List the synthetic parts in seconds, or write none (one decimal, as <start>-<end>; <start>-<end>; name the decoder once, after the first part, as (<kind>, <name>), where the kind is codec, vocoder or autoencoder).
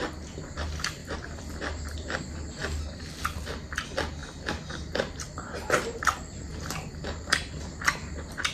1.0-2.2 (vocoder, BigVGAN v2); 6.5-7.5